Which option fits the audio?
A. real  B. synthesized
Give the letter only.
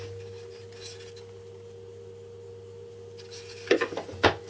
A